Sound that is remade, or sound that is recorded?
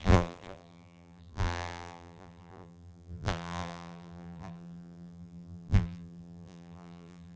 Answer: remade